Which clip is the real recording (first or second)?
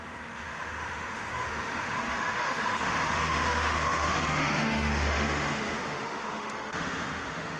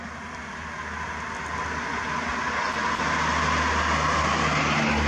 second